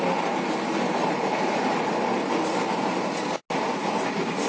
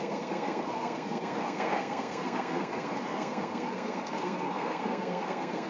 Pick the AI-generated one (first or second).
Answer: second